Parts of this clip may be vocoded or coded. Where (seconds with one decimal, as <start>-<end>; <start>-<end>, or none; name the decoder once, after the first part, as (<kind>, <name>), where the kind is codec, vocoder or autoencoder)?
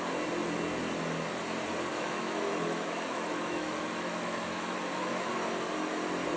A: 1.9-5.3 (autoencoder, DAC-VAE)